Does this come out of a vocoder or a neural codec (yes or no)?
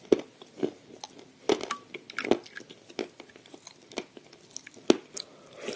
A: no